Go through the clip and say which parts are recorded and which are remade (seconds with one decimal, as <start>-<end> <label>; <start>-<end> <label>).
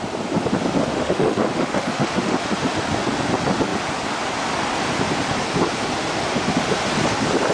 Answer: 0.0-0.8 recorded; 0.8-2.4 remade; 2.4-7.5 recorded